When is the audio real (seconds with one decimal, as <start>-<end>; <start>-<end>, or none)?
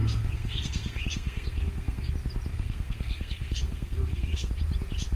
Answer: 2.1-2.5; 4.5-5.2